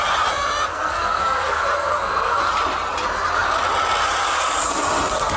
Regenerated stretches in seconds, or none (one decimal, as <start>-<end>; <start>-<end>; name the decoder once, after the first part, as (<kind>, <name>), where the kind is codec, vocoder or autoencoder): 0.7-2.4 (codec, SNAC)